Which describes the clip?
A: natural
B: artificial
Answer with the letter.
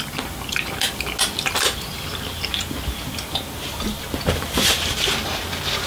A